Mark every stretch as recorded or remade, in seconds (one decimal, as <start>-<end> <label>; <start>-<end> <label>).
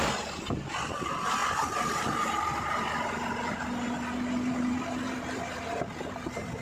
0.0-6.6 recorded